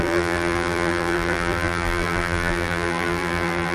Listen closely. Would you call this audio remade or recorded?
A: remade